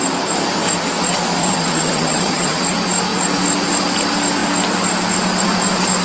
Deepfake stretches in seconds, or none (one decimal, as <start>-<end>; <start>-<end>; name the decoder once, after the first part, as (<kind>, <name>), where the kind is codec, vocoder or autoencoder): 1.4-2.6 (vocoder, HiFi-GAN)